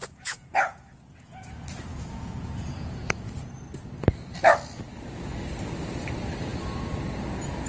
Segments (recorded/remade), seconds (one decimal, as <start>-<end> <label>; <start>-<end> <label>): 0.0-1.5 remade; 1.5-1.9 recorded; 1.9-3.6 remade; 3.6-7.7 recorded